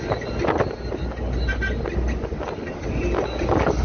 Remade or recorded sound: recorded